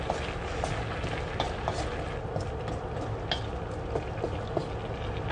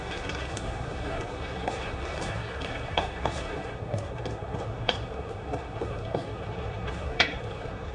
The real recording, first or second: first